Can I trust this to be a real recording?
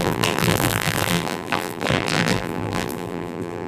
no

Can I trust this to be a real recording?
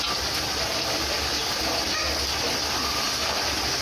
yes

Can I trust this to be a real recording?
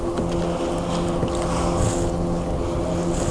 yes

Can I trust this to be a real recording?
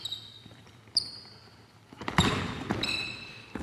no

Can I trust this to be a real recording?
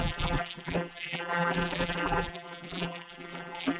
no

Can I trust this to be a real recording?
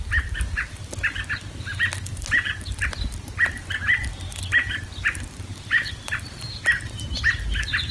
yes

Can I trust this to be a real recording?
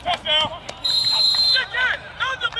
no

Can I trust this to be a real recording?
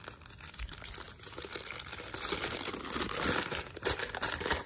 yes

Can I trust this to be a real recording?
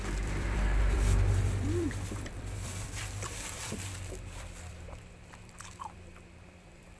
no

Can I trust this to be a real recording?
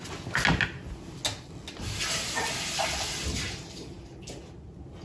yes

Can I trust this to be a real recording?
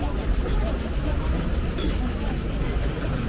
yes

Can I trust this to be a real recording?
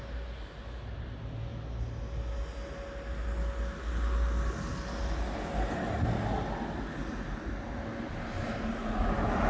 yes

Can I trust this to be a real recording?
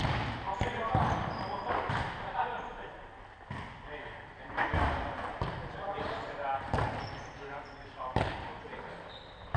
yes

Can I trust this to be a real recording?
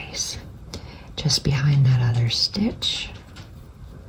no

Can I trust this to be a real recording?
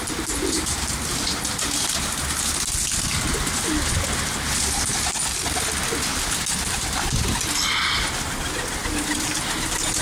yes